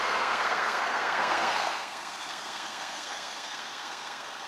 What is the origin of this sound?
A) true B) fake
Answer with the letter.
B